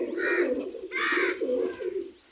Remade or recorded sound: recorded